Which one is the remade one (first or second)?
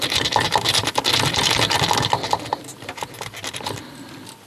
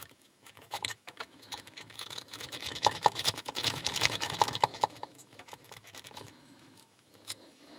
second